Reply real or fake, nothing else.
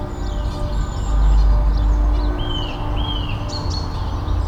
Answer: real